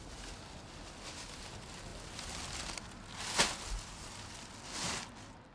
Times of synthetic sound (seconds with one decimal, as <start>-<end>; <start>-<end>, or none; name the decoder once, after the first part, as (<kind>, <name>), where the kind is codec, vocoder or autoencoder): none